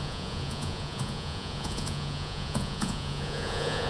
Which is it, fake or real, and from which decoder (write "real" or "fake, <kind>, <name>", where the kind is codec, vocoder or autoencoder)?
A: fake, vocoder, Vocos